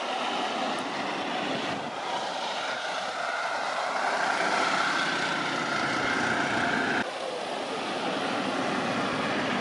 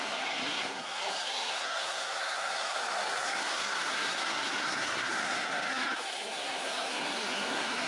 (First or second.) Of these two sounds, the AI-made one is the second